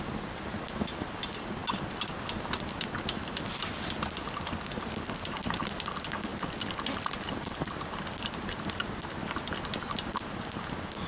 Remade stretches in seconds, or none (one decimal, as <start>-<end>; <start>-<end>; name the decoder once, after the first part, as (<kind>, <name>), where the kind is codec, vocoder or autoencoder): 8.3-8.8 (vocoder, BigVGAN v2)